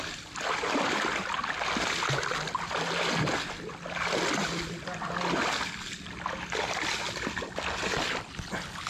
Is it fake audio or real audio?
real